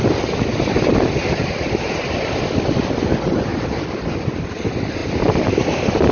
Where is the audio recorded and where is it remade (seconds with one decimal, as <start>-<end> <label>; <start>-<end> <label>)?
0.0-3.5 recorded; 3.5-4.4 remade; 4.4-6.1 recorded